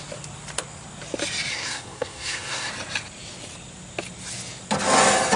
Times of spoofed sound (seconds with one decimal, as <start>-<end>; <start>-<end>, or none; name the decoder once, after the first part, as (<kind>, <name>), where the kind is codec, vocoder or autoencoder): 1.5-2.7 (codec, SNAC)